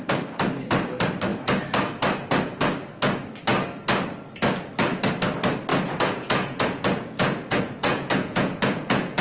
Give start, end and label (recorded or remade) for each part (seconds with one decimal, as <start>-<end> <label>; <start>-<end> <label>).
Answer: 0.0-5.7 recorded; 5.7-9.2 remade